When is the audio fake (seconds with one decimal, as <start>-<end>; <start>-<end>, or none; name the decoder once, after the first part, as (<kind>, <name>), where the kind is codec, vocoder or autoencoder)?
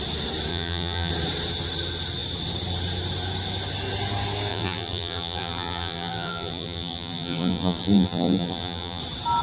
0.5-1.1 (vocoder, BigVGAN v2); 4.5-9.0